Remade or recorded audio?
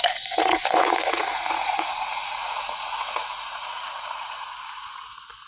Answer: remade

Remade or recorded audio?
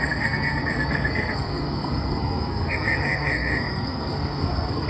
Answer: remade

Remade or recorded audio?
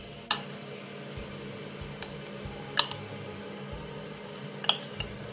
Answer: recorded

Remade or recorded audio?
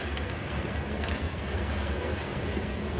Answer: remade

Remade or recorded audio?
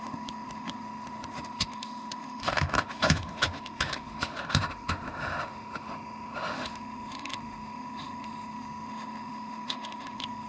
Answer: remade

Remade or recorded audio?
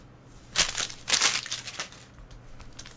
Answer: recorded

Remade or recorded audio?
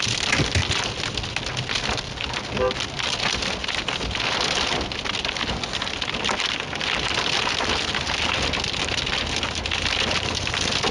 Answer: recorded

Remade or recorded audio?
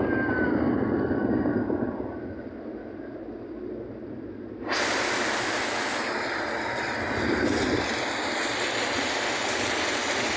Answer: recorded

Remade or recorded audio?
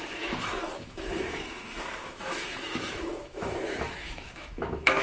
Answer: remade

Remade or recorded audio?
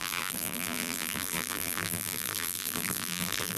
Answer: remade